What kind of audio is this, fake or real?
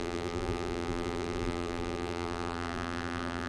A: fake